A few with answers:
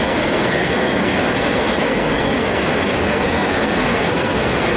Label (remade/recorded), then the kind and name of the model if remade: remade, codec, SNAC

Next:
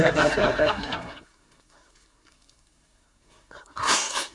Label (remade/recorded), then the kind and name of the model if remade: remade, codec, SNAC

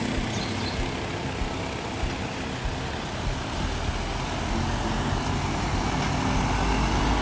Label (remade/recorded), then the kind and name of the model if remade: recorded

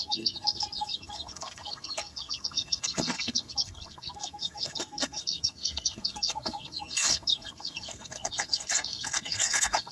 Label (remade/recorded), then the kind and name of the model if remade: remade, codec, SNAC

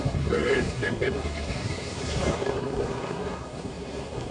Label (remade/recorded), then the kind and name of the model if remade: remade, codec, SNAC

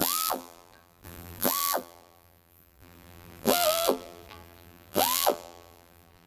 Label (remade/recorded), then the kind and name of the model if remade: remade, vocoder, BigVGAN v2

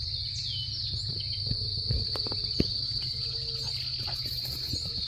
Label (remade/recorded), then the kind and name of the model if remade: recorded